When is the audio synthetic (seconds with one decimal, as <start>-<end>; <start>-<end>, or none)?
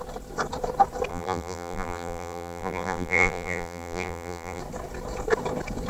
1.1-4.6